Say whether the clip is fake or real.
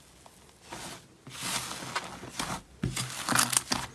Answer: real